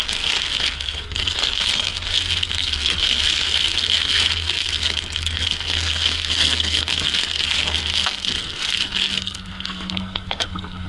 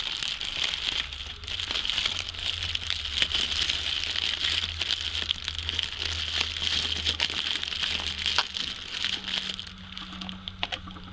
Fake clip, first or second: first